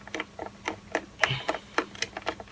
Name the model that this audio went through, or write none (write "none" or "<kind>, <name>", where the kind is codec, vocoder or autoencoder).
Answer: none